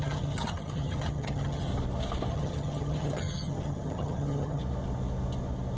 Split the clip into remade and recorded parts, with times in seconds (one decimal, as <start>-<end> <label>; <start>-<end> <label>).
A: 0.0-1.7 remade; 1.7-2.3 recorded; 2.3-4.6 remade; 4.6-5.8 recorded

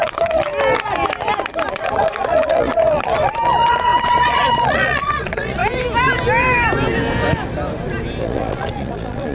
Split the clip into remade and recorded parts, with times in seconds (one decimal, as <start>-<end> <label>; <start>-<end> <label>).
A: 0.0-0.5 remade; 0.5-1.7 recorded; 1.7-5.6 remade; 5.6-8.2 recorded; 8.2-9.3 remade

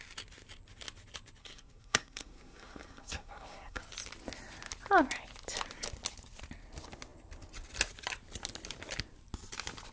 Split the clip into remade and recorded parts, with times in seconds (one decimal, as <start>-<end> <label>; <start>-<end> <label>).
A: 0.0-1.4 recorded; 1.4-3.8 remade; 3.8-9.9 recorded